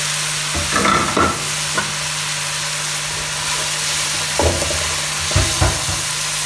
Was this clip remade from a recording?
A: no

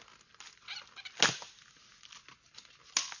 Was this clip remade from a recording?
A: no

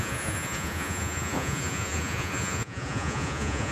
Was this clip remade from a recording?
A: yes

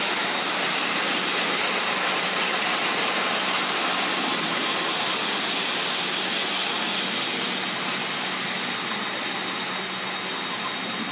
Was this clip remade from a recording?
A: no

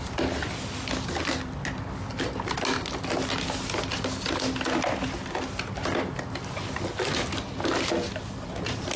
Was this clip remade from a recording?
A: no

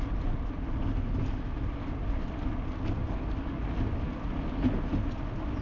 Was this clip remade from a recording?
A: no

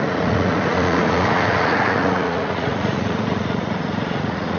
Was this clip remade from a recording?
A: yes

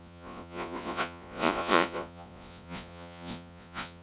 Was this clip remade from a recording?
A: yes